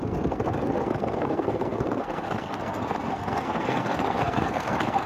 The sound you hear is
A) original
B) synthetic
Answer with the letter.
B